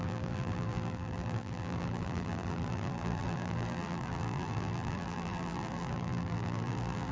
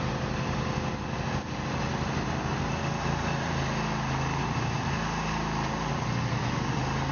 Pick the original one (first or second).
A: second